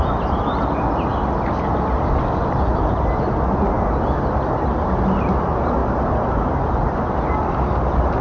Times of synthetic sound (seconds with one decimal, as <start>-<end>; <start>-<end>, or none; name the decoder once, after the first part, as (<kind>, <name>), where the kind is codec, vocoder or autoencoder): none